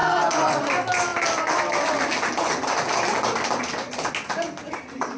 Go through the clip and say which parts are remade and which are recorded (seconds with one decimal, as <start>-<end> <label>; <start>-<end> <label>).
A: 0.0-0.6 remade; 0.6-5.2 recorded